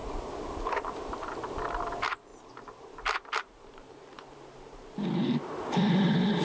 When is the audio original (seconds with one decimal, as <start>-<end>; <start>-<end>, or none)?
2.3-3.4